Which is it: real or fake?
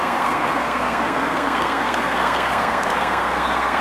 fake